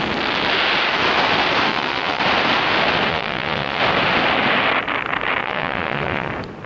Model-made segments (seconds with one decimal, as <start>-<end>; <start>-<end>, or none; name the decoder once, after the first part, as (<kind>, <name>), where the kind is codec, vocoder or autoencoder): 1.7-2.2 (vocoder, Vocos); 3.1-3.8; 5.4-6.3